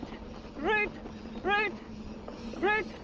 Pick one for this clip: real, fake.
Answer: real